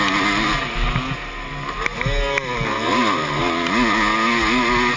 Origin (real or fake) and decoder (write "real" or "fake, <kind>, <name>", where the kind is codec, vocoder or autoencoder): real